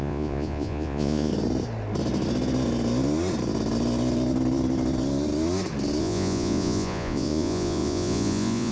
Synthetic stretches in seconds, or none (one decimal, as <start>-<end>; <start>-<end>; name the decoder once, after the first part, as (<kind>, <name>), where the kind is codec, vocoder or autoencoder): 0.0-1.3 (vocoder, Vocos); 6.0-8.7